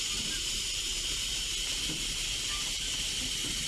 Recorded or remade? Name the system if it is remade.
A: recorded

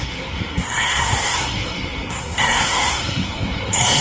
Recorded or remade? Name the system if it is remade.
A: remade, codec, SNAC